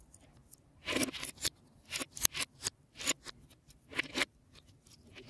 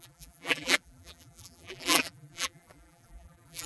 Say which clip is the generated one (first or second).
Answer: second